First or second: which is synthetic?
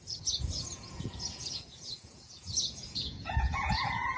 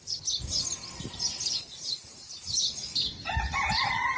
first